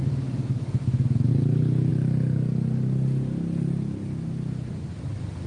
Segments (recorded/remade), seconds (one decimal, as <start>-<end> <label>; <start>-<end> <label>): 0.0-1.3 remade; 1.3-5.5 recorded

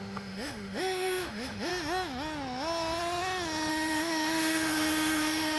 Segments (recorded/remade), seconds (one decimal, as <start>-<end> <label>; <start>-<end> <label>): 0.0-1.7 remade; 1.7-3.7 recorded; 3.7-5.6 remade

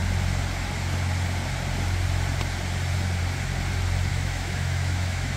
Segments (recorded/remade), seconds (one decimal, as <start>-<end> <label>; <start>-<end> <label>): 0.0-4.1 recorded; 4.1-5.4 remade

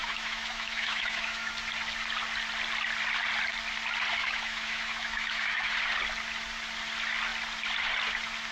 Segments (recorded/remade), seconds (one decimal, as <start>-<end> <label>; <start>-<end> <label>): 0.0-1.5 remade; 1.5-4.2 recorded; 4.2-5.7 remade; 5.7-8.5 recorded

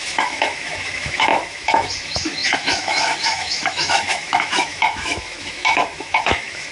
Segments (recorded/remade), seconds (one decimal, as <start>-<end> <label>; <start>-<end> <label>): 0.0-6.7 remade

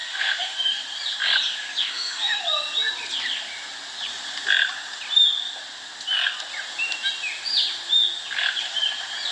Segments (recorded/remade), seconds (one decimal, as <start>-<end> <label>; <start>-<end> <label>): 0.0-0.8 remade; 0.8-1.8 recorded; 1.8-2.4 remade; 2.4-9.3 recorded

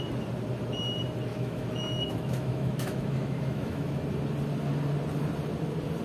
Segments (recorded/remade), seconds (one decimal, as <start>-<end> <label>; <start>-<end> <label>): 0.0-1.3 recorded; 1.3-4.0 remade; 4.0-6.0 recorded